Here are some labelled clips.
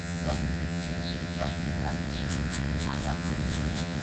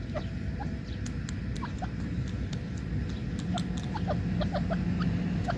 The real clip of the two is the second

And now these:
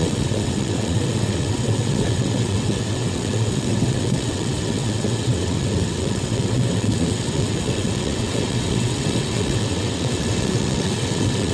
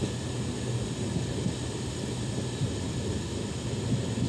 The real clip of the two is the second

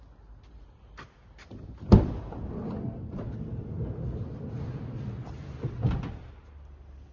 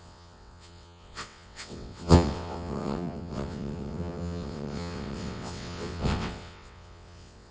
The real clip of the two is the first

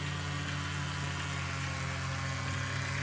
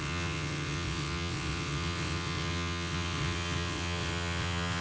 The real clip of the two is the first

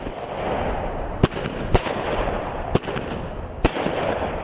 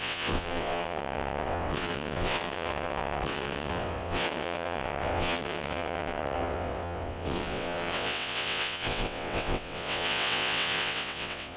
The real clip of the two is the first